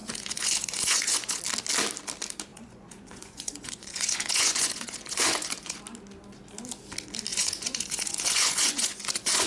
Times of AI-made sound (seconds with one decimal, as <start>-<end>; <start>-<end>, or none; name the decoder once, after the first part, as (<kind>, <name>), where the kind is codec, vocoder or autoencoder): 0.0-1.4 (vocoder, Vocos); 2.5-5.8; 7.3-9.5

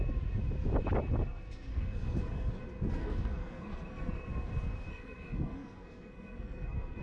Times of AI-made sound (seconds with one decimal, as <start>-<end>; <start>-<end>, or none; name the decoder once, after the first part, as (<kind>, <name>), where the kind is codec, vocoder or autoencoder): 1.7-2.5 (codec, SNAC); 3.0-4.3; 4.9-7.0

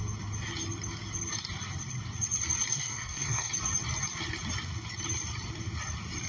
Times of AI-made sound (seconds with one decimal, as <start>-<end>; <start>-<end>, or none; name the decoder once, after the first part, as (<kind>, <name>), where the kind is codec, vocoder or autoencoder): 2.7-3.5 (codec, SNAC)